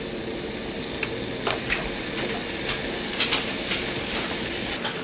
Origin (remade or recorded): recorded